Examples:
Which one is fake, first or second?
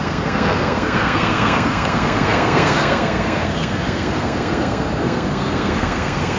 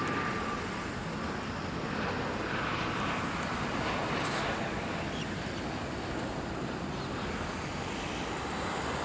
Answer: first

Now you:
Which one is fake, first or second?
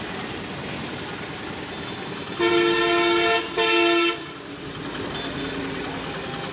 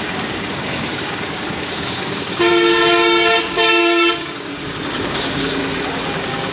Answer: second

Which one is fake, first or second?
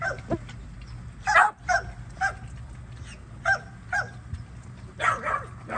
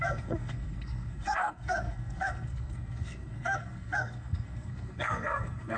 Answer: second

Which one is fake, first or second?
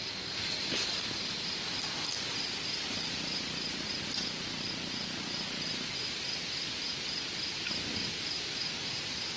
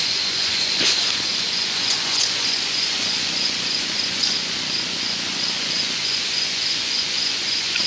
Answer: second